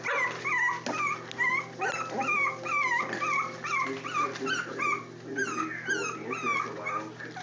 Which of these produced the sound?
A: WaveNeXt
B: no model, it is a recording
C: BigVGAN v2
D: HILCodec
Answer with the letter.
B